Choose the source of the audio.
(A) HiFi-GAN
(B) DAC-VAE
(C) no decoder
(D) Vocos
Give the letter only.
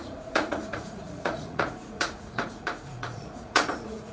D